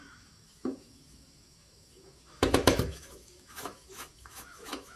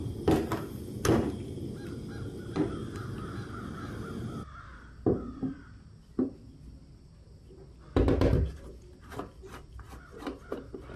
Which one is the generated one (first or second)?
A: first